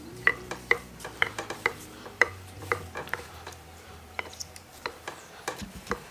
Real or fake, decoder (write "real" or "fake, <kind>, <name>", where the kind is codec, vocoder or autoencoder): fake, vocoder, BigVGAN v2